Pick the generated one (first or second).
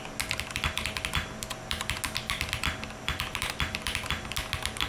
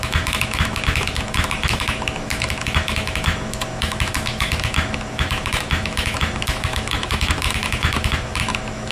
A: second